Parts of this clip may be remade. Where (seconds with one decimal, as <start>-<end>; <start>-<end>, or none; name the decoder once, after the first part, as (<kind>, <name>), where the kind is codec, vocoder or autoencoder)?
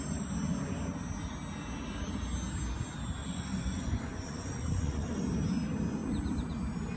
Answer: 3.2-5.2 (vocoder, Vocos)